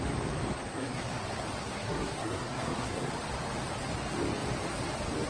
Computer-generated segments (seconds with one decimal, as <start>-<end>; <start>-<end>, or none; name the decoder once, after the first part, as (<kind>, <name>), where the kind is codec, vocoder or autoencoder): 0.7-1.2 (codec, SNAC); 1.6-3.1